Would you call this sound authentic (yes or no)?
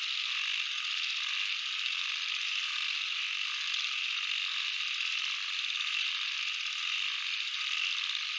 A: yes